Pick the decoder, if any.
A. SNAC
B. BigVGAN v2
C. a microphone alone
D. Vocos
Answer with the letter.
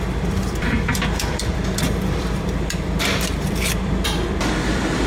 B